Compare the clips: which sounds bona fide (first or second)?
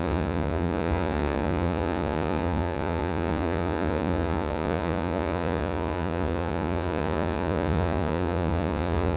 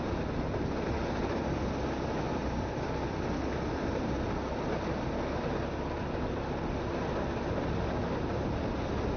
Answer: second